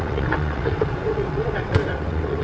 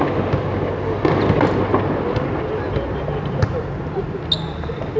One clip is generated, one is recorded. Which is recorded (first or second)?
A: second